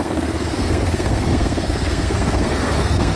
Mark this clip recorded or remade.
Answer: remade